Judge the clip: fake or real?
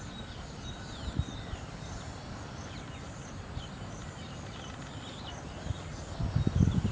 real